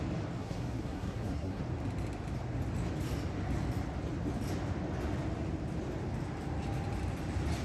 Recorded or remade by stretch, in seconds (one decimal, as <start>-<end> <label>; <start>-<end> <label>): 0.0-0.4 recorded; 0.4-1.6 remade; 1.6-7.6 recorded